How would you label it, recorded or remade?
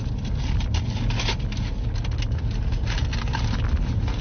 recorded